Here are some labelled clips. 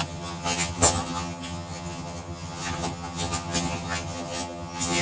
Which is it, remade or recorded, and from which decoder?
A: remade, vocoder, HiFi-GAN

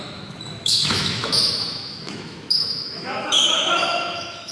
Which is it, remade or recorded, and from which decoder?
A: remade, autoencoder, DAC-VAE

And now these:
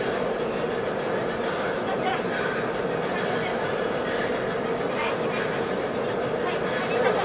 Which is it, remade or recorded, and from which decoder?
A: recorded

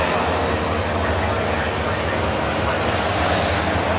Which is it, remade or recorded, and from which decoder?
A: recorded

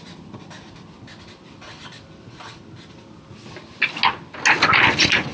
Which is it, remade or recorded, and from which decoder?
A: recorded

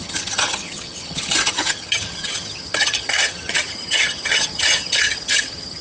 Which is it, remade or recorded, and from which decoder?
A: remade, vocoder, HiFi-GAN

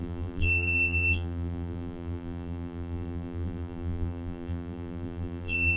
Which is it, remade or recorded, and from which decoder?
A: remade, vocoder, BigVGAN v2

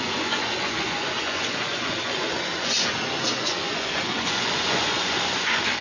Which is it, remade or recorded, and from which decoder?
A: remade, vocoder, Vocos